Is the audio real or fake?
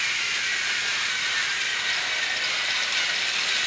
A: real